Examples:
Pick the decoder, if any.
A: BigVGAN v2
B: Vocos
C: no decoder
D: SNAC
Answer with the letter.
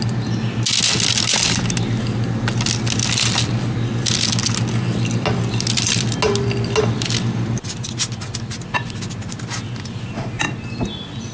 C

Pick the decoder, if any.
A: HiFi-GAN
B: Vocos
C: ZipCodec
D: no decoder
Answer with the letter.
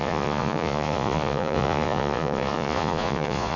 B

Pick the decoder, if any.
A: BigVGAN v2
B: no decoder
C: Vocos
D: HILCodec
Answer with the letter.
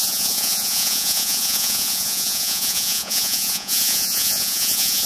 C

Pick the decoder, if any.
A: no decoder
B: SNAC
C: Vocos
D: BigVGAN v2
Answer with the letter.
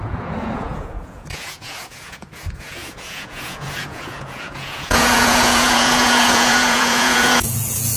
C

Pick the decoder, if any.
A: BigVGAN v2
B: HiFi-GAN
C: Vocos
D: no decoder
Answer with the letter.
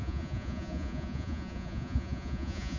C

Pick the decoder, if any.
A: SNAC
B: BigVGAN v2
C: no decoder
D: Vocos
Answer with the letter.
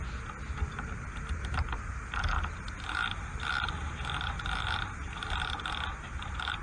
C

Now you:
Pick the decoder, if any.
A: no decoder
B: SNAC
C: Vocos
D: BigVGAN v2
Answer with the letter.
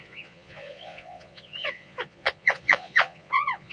C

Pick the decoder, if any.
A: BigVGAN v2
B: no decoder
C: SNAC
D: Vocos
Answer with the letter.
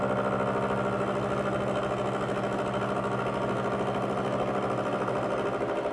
B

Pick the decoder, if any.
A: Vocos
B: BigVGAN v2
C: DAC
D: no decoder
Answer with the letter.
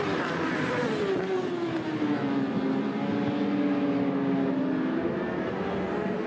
D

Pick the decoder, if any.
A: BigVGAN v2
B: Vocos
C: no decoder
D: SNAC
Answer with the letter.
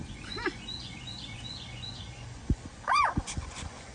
B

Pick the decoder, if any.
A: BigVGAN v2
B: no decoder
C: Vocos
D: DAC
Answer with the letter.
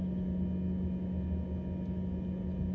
B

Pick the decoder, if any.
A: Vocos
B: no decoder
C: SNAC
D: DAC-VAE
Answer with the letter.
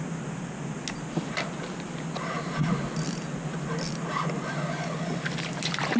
B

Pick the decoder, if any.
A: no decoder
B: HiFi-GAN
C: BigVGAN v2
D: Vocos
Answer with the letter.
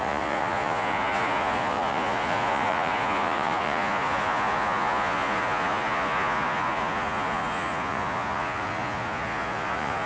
D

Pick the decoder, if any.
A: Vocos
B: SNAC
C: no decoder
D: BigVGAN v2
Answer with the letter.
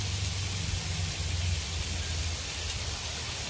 C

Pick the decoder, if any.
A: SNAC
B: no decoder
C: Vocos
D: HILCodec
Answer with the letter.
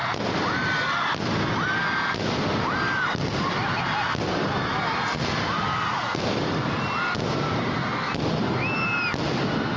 B